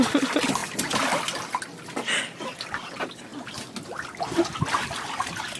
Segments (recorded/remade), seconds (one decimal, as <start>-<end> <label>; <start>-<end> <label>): 0.0-0.6 recorded; 0.6-1.2 remade; 1.2-5.6 recorded